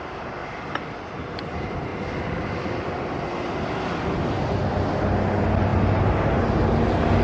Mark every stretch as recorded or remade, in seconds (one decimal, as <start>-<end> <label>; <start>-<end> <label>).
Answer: 0.0-7.2 recorded